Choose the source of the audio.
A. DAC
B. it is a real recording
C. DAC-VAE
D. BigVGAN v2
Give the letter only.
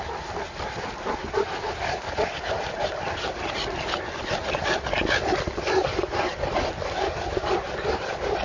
B